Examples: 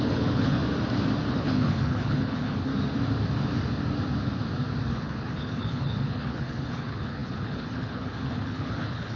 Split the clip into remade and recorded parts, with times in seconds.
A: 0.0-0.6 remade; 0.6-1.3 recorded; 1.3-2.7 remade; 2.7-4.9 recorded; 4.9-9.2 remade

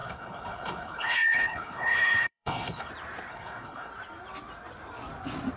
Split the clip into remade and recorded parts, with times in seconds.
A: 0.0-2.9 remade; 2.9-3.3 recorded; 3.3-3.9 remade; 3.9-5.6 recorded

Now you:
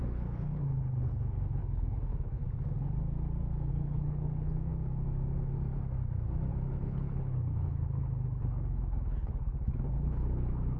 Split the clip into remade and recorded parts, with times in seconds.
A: 0.0-2.4 remade; 2.4-3.7 recorded; 3.7-4.7 remade; 4.7-6.5 recorded; 6.5-10.8 remade

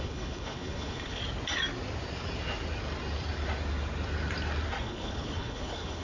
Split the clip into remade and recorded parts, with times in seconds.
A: 0.0-1.2 remade; 1.2-4.8 recorded; 4.8-6.0 remade

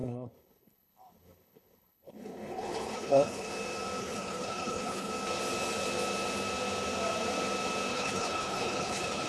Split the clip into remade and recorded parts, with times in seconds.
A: 0.0-3.5 remade; 3.5-4.0 recorded; 4.0-5.1 remade; 5.1-7.9 recorded; 7.9-9.3 remade

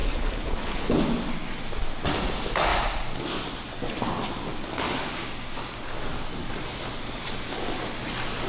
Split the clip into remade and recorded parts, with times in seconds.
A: 0.0-1.0 remade; 1.0-8.5 recorded

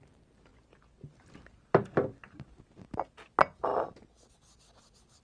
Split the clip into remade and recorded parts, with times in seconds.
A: 0.0-5.2 recorded

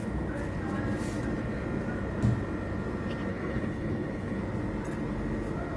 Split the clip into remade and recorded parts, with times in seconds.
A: 0.0-3.3 recorded; 3.3-4.4 remade; 4.4-5.8 recorded